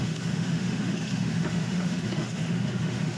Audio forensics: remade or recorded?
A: remade